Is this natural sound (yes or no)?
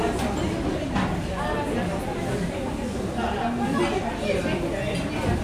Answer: yes